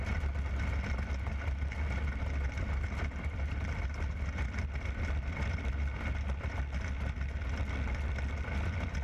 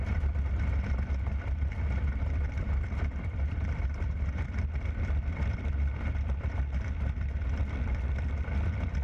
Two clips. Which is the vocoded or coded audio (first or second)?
second